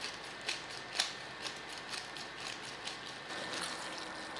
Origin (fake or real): real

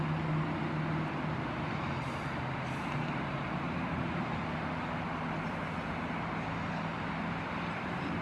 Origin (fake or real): real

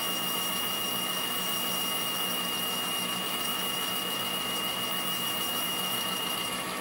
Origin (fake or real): fake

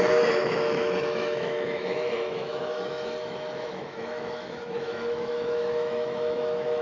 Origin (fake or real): fake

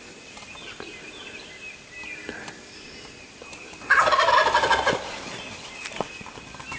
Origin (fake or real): real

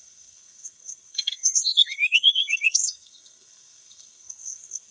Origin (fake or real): fake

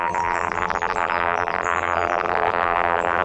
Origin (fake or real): fake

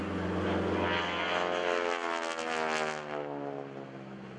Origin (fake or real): real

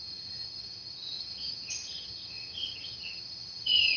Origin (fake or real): fake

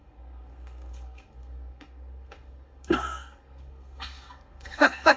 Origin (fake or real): fake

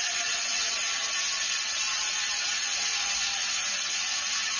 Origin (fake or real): fake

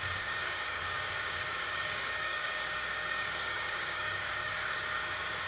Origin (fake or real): fake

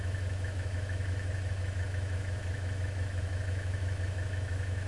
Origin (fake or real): fake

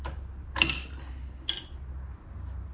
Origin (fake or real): real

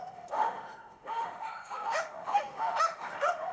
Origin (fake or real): fake